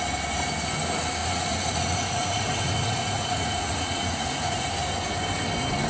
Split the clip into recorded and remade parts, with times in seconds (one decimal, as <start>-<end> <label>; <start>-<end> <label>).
0.0-1.2 recorded; 1.2-4.7 remade; 4.7-5.9 recorded